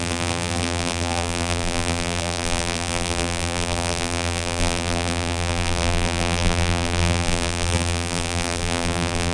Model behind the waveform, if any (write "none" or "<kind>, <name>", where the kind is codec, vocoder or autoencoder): vocoder, BigVGAN v2